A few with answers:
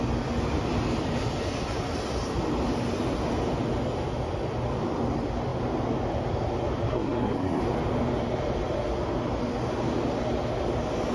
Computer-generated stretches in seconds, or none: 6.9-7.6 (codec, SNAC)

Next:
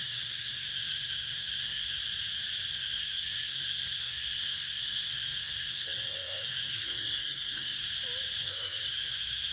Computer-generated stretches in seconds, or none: 0.0-2.0 (codec, SNAC); 2.7-7.8; 8.4-9.5

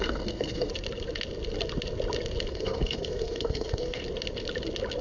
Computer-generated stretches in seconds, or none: 0.0-0.7 (codec, SNAC); 2.5-4.0

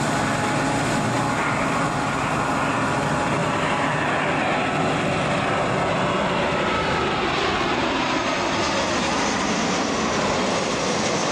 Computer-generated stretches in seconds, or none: none

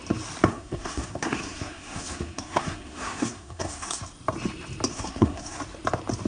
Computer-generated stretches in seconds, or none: 0.5-4.0 (codec, SNAC); 4.9-5.6

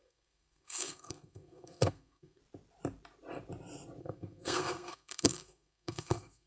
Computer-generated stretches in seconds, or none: 0.0-2.4 (codec, SNAC); 4.0-6.5

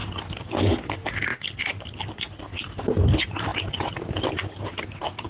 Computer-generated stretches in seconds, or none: none